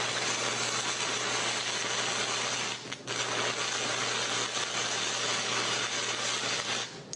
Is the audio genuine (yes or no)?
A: yes